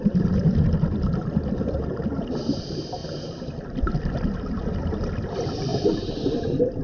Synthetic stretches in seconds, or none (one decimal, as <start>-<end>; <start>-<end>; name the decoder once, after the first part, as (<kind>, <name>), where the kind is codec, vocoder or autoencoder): 0.0-0.4 (vocoder, BigVGAN v2); 2.6-3.0; 3.9-6.8